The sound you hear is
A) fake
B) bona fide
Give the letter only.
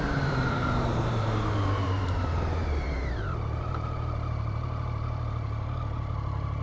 A